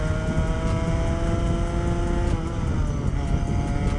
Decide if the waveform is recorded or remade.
recorded